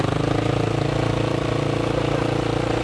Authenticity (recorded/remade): recorded